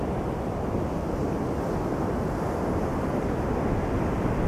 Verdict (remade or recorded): recorded